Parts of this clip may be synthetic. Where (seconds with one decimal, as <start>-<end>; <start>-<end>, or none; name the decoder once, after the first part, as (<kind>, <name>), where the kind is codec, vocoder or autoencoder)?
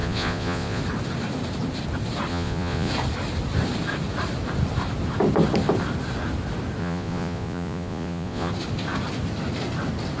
0.0-0.8 (vocoder, Vocos); 2.3-2.9; 6.8-8.5